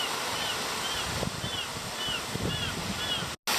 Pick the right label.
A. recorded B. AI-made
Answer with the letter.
A